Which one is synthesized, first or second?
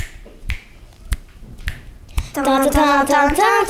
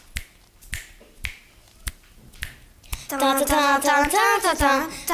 first